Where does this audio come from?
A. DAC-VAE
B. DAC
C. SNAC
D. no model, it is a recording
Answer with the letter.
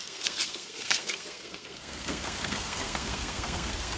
C